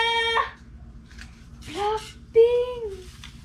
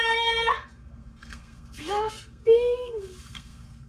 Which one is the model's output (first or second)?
second